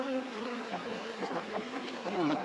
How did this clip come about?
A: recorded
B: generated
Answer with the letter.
B